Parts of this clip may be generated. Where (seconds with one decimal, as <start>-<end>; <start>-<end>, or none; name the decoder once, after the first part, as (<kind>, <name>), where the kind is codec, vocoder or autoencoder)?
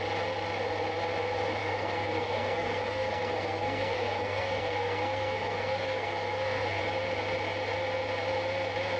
1.6-6.8 (codec, SNAC)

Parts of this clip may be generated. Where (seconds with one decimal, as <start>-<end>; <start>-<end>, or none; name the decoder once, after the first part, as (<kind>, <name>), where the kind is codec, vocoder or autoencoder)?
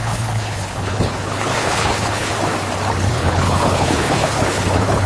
0.0-2.3 (codec, HILCodec); 3.1-5.1